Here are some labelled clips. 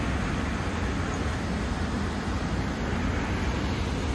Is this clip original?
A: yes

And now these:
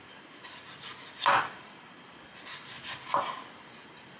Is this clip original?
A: yes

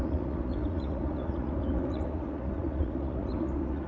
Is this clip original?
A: no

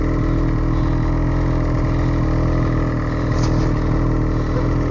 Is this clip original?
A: yes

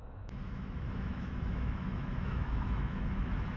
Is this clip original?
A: no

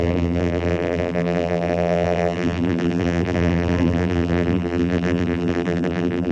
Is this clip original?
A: no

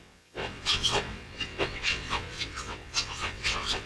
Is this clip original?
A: no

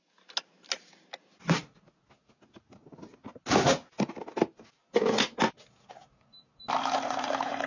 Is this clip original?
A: yes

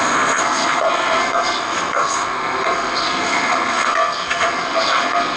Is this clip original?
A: no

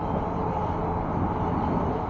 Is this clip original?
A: yes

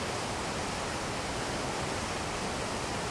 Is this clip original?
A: yes